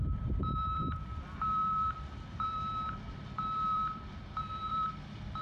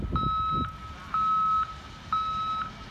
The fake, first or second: first